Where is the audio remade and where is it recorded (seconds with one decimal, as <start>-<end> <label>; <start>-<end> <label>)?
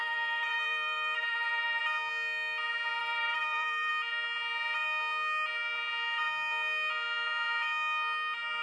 0.0-1.8 remade; 1.8-3.0 recorded; 3.0-3.9 remade; 3.9-8.6 recorded